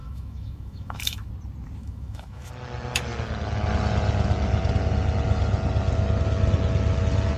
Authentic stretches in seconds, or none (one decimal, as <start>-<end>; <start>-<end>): 1.3-1.8; 2.5-7.4